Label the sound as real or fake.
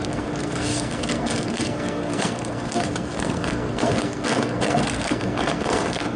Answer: fake